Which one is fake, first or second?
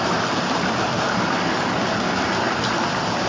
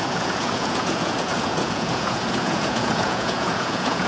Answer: second